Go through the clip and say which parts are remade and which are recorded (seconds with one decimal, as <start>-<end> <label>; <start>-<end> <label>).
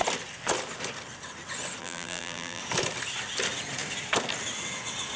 0.0-1.8 recorded; 1.8-2.6 remade; 2.6-5.2 recorded